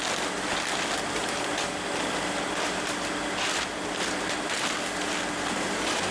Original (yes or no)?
yes